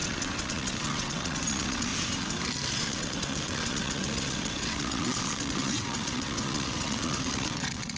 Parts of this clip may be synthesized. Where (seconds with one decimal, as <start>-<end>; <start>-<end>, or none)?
0.0-1.9; 2.7-8.0